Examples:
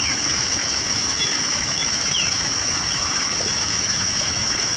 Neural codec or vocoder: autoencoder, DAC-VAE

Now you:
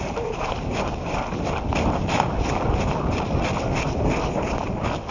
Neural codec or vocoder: none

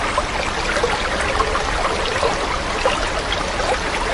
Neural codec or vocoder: none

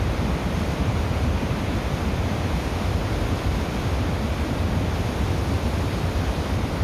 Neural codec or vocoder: none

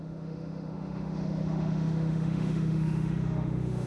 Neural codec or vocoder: autoencoder, DAC-VAE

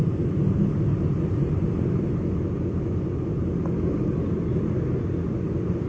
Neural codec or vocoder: none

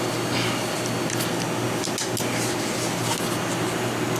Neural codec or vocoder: none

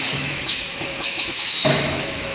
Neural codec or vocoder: autoencoder, DAC-VAE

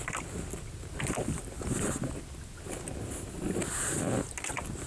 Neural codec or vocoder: none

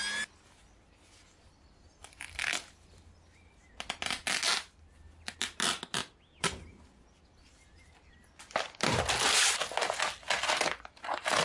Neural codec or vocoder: none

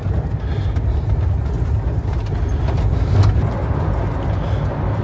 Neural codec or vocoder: none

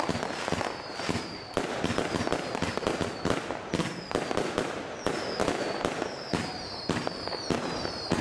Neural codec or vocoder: none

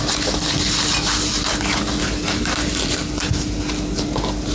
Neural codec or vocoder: none